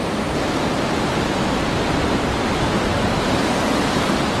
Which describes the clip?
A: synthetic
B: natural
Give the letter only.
B